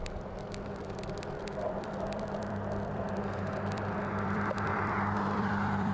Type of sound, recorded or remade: remade